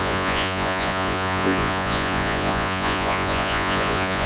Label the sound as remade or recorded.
remade